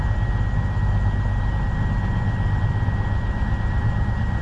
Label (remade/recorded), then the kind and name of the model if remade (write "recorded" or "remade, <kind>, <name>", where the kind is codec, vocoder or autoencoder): recorded